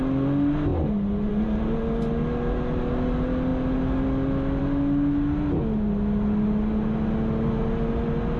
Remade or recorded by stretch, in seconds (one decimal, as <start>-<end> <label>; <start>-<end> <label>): 0.0-8.4 recorded